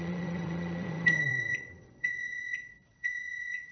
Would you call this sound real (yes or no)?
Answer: no